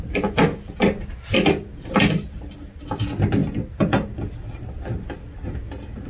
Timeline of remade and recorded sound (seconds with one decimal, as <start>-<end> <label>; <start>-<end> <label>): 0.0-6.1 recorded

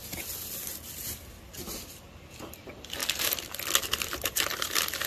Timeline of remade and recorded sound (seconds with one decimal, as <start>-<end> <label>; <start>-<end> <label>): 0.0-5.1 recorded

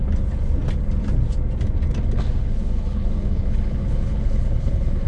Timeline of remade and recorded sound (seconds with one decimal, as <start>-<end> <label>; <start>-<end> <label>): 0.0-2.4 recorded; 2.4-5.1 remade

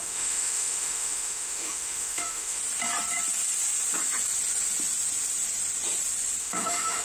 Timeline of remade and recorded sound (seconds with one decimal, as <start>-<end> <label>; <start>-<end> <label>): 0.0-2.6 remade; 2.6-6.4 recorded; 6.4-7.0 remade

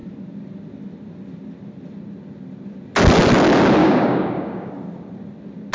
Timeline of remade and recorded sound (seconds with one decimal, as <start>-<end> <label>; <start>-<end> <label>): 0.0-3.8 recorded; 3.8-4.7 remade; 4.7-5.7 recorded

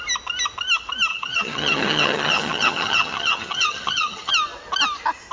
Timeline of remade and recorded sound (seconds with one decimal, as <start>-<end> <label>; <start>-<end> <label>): 0.0-1.1 recorded; 1.1-4.3 remade; 4.3-5.3 recorded